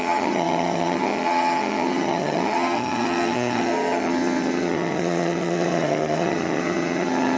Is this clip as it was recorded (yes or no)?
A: no